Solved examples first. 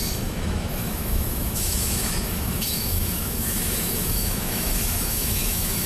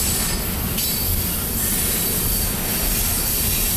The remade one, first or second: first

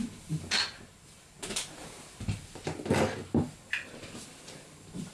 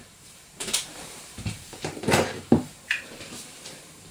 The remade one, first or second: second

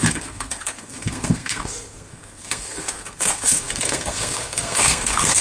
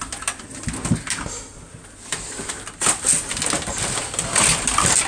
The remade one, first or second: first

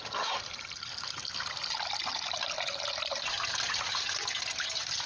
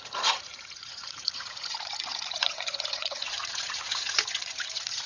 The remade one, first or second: second